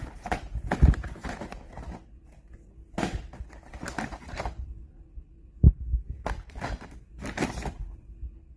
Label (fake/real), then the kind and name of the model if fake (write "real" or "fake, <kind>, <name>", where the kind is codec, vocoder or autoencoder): real